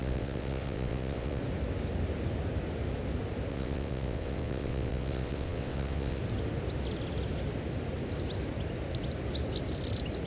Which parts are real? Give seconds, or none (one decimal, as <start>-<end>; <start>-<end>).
1.4-3.5; 6.2-10.3

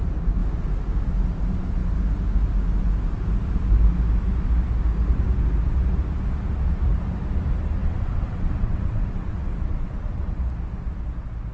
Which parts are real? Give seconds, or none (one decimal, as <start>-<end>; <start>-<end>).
0.0-7.8; 10.4-11.5

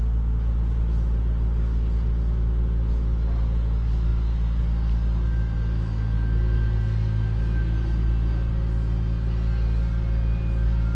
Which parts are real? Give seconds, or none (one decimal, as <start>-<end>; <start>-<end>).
0.0-10.9

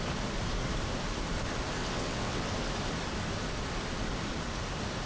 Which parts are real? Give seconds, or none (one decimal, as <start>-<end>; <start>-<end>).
0.0-1.8; 2.5-5.1

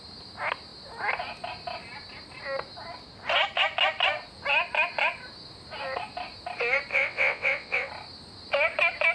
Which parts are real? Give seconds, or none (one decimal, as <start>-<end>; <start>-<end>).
0.0-6.9; 7.9-9.1

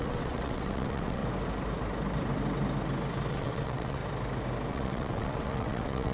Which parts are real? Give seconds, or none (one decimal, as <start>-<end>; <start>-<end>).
1.2-3.3; 4.0-4.7

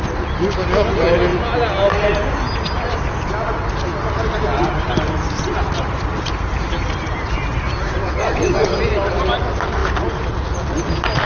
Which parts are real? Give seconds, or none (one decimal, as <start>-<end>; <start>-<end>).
0.0-8.0; 8.8-11.3